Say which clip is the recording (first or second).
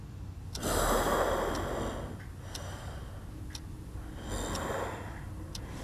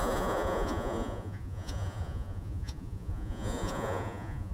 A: first